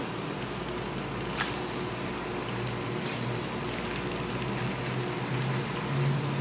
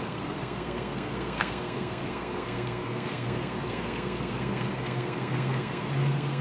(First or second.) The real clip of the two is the first